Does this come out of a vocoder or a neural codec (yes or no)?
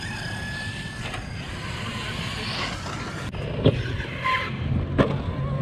no